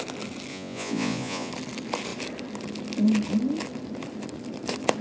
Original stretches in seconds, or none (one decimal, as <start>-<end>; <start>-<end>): 0.0-0.5; 1.5-5.0